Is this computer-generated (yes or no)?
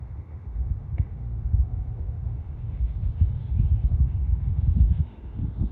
yes